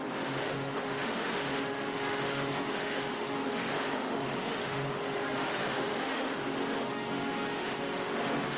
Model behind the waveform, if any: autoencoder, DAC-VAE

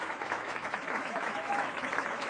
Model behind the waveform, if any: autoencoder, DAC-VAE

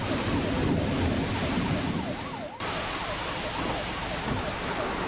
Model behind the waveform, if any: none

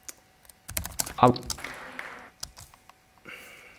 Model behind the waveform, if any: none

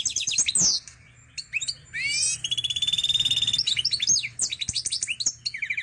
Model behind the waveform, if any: none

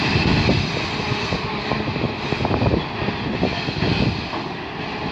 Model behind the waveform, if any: none